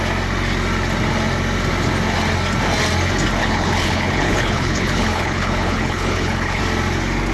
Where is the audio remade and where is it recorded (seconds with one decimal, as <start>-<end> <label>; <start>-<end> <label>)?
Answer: 0.0-3.4 recorded; 3.4-6.6 remade; 6.6-7.3 recorded